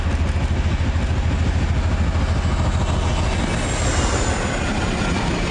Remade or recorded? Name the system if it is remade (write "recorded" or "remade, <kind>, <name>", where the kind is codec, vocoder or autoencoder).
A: recorded